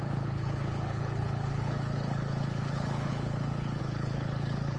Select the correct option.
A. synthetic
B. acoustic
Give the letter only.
A